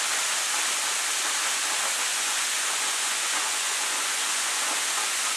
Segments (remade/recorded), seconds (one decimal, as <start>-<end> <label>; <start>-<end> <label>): 0.0-2.1 recorded; 2.1-5.4 remade